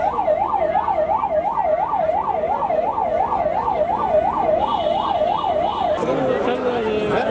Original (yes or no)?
yes